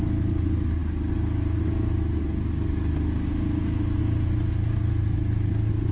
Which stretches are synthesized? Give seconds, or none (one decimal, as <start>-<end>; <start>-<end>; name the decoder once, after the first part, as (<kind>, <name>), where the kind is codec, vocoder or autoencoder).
none